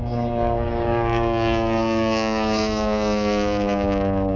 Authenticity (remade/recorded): remade